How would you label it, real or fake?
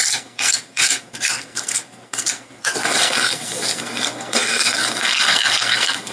fake